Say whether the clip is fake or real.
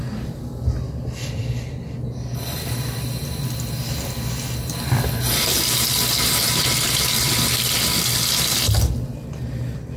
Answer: real